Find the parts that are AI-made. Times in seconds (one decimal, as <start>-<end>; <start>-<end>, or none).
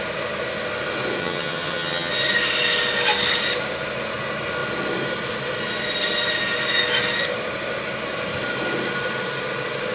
1.2-2.1